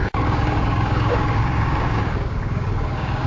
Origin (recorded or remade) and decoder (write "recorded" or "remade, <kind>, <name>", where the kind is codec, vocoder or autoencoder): remade, codec, DAC